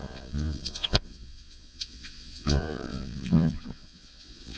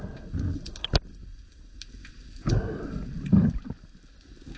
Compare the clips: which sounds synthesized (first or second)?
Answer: first